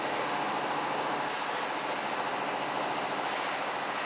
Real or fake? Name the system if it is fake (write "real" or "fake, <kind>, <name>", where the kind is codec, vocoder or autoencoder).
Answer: real